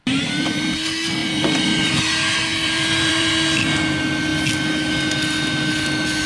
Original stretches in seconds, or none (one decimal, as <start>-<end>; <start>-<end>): 0.6-1.2; 1.9-2.5; 3.3-6.3